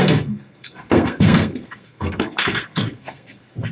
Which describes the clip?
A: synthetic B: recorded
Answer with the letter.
A